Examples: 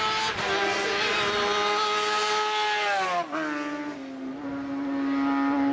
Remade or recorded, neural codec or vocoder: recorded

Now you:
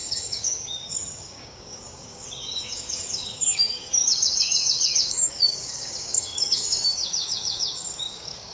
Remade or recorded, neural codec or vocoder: remade, codec, DAC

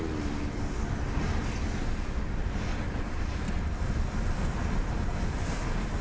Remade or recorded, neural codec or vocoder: recorded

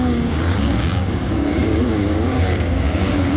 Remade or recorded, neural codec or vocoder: remade, codec, DAC